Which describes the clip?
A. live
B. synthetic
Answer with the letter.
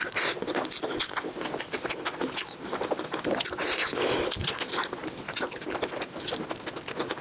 A